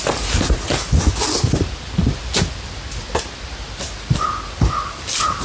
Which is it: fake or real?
real